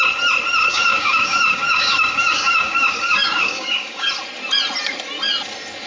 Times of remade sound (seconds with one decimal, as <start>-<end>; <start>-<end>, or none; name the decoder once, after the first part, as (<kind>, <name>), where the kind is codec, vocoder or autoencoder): 0.6-4.1 (codec, DAC)